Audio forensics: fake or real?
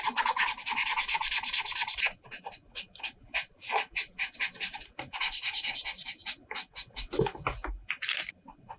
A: real